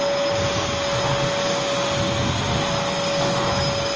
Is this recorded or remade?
recorded